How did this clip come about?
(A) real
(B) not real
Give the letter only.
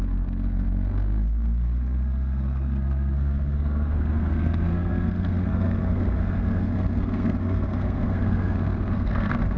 B